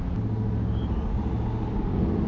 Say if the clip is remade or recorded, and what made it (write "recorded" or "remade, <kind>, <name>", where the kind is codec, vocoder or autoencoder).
recorded